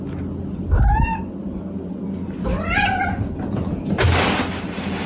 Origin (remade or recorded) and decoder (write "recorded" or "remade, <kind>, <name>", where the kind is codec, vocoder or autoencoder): recorded